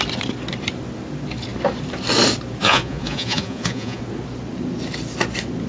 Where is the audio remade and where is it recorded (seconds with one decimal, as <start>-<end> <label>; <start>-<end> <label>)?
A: 0.0-2.6 recorded; 2.6-4.0 remade; 4.0-5.7 recorded